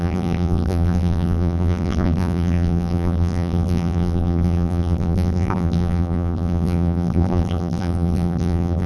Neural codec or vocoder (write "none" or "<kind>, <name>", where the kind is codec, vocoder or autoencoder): vocoder, BigVGAN v2